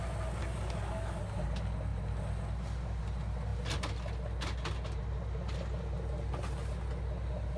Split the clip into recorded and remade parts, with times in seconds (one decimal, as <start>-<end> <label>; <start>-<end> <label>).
0.0-0.4 recorded; 0.4-1.2 remade; 1.2-7.6 recorded